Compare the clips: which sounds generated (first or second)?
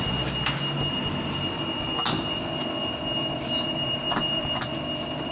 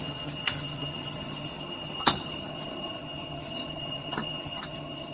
second